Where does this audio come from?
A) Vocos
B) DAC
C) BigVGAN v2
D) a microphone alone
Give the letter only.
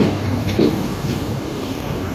B